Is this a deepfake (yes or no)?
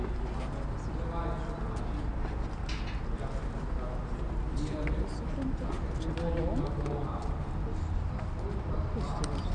no